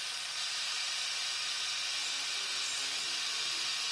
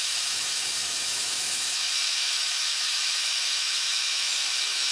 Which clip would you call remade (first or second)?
second